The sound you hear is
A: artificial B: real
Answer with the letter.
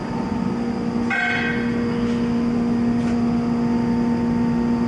B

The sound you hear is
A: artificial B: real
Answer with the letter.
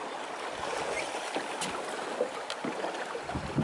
B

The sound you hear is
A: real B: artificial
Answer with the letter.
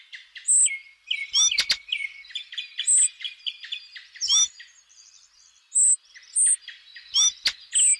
A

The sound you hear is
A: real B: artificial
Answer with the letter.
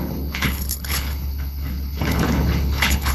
B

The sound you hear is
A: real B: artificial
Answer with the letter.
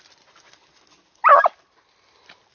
A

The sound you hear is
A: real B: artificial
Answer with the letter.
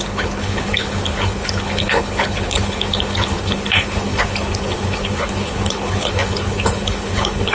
B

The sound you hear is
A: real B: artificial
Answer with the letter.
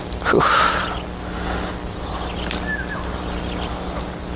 A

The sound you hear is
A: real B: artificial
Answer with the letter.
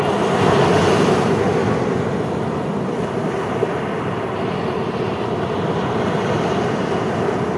A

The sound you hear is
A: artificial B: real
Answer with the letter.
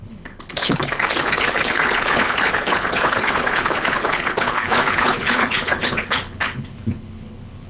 A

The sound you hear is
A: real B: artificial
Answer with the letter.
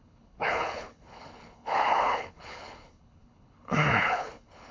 B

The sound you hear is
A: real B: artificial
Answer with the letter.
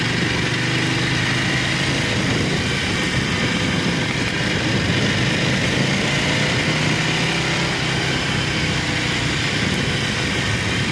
A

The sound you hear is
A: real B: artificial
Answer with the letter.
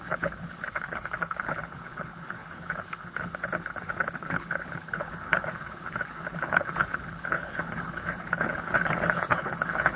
B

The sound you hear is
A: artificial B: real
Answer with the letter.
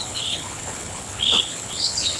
A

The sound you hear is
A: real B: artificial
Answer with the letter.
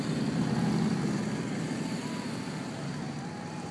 A